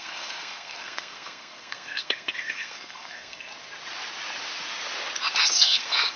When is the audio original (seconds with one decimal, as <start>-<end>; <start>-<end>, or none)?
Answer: 3.5-5.4